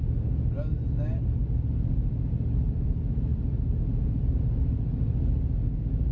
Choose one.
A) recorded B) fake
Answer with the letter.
A